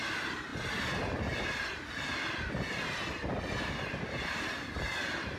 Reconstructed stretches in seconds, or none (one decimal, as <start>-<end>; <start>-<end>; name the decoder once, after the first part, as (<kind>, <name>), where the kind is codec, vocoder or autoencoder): none